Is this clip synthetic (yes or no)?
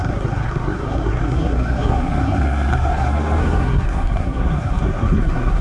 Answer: yes